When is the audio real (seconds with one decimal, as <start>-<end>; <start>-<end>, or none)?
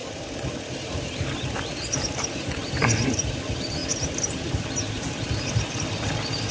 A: 0.0-6.5